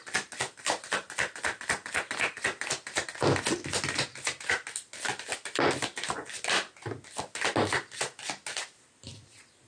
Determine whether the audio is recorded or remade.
recorded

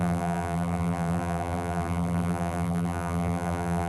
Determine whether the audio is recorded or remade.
remade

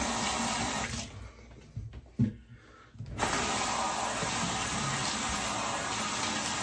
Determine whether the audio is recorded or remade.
recorded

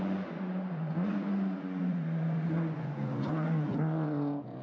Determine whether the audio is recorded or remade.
remade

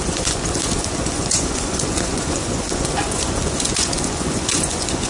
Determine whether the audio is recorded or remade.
remade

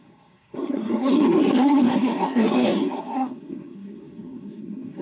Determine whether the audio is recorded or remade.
remade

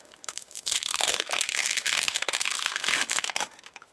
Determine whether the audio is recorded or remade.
remade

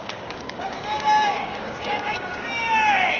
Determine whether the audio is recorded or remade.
remade